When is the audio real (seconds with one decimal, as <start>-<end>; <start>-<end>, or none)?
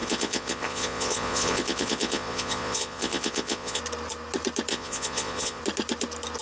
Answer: 3.8-4.7; 5.6-6.4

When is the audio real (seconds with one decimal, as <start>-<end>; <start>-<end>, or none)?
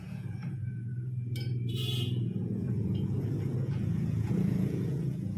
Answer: 0.9-1.7